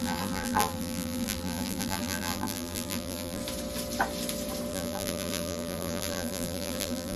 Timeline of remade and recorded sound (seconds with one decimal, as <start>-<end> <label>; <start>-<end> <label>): 0.0-3.4 remade; 3.4-4.7 recorded; 4.7-7.2 remade